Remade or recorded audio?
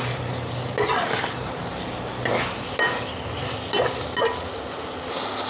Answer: recorded